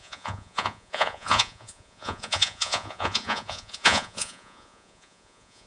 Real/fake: fake